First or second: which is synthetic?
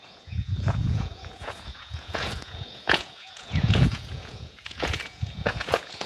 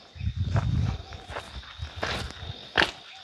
first